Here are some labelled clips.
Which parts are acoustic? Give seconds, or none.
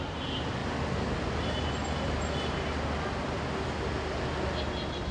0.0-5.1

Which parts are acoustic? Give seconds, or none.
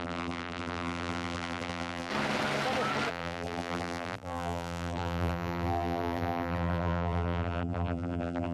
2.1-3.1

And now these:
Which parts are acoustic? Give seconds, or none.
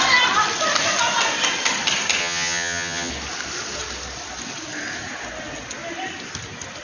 0.0-2.2; 3.1-6.8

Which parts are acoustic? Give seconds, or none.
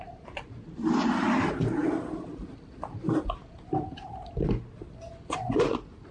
0.0-1.8; 3.9-6.1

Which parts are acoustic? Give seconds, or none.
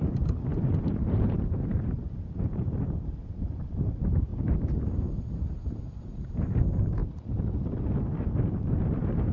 7.0-8.5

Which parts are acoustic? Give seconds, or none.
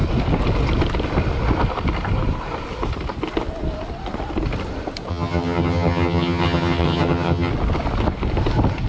0.0-5.1; 7.5-8.9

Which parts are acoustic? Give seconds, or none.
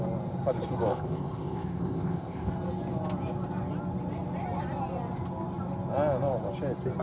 0.0-0.9; 2.5-7.0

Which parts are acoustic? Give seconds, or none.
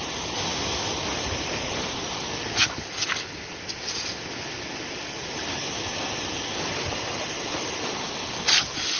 0.0-9.0